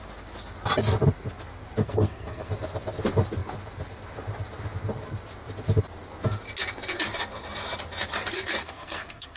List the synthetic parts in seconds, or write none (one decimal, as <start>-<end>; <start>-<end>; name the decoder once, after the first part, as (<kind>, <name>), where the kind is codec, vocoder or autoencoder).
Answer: 1.8-2.5 (codec, SNAC); 8.6-9.4